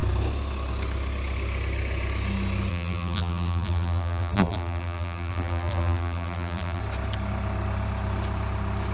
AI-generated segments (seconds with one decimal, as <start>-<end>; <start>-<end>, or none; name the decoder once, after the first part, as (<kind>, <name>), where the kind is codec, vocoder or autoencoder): 2.7-6.8 (vocoder, BigVGAN v2)

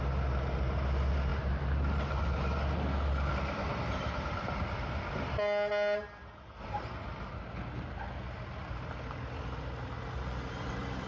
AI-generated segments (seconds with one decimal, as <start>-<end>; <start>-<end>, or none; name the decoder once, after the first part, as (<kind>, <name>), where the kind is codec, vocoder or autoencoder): none

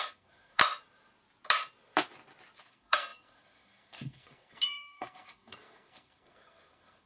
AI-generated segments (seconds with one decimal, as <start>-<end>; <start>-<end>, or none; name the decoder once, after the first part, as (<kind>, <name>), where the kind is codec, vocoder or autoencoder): 0.0-0.6 (codec, SNAC); 2.6-7.1

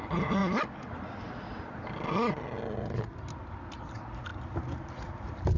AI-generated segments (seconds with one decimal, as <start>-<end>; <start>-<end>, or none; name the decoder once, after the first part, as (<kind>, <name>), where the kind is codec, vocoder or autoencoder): 0.0-0.4 (vocoder, BigVGAN v2); 3.8-4.3

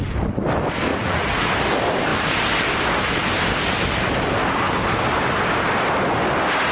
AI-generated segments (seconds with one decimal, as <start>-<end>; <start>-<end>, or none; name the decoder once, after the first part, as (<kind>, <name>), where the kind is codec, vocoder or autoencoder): 0.9-1.5 (vocoder, Vocos)